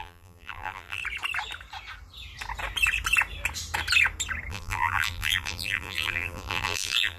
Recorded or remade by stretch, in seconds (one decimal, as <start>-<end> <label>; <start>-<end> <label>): 0.0-1.0 remade; 1.0-4.5 recorded; 4.5-7.2 remade